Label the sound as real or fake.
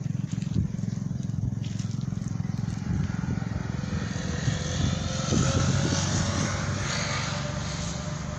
real